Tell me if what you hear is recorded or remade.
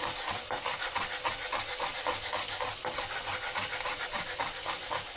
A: recorded